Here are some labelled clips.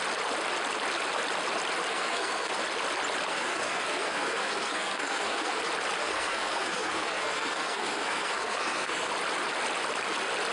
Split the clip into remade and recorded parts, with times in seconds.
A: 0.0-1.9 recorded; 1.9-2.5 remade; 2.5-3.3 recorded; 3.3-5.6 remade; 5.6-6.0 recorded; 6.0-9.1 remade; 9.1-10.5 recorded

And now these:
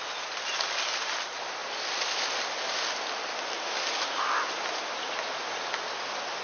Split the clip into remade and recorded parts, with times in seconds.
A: 0.0-6.4 recorded

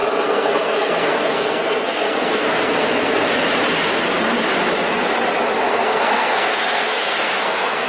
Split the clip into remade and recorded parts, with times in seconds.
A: 0.0-3.3 remade; 3.3-5.7 recorded; 5.7-7.9 remade

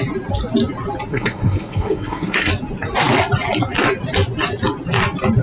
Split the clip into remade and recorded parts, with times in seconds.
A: 0.0-1.1 recorded; 1.1-2.5 remade; 2.5-5.4 recorded

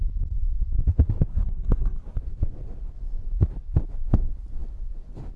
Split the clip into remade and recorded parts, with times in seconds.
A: 0.0-1.3 recorded; 1.3-2.2 remade; 2.2-5.4 recorded

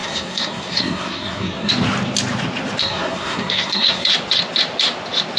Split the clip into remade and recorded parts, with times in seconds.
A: 0.0-1.7 remade; 1.7-2.8 recorded; 2.8-4.1 remade; 4.1-5.4 recorded

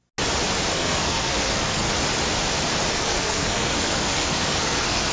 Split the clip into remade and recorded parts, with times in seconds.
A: 0.0-0.7 recorded; 0.7-1.9 remade; 1.9-2.9 recorded; 2.9-5.1 remade